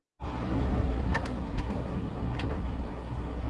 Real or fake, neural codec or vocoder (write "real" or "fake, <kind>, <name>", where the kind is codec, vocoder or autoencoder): fake, codec, SNAC